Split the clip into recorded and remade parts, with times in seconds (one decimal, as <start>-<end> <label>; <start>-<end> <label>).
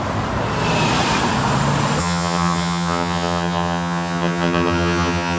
0.0-2.0 recorded; 2.0-5.4 remade